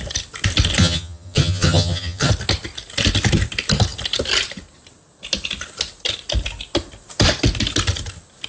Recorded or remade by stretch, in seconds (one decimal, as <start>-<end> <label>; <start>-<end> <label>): 0.0-0.8 recorded; 0.8-2.3 remade; 2.3-8.5 recorded